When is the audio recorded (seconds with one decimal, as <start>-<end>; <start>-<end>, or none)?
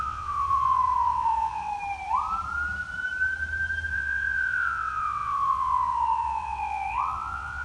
1.7-3.9